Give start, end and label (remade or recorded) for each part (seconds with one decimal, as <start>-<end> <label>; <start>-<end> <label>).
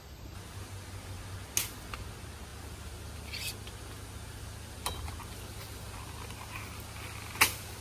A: 0.0-7.8 recorded